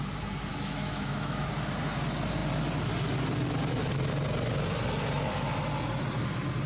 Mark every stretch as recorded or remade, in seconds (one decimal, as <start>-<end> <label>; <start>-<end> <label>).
0.0-0.5 recorded; 0.5-1.5 remade; 1.5-6.7 recorded